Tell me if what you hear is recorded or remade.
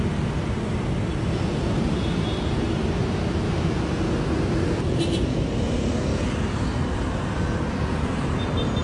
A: recorded